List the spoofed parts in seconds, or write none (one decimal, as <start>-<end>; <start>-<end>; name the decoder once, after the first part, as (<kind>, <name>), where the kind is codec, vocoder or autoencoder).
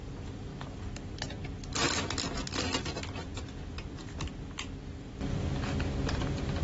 none